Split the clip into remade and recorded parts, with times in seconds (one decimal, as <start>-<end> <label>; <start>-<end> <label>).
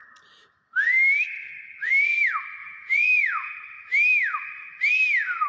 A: 0.0-2.6 recorded; 2.6-3.5 remade; 3.5-5.5 recorded